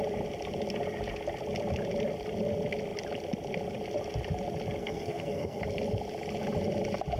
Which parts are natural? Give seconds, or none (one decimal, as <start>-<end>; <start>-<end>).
0.0-4.8; 5.6-7.2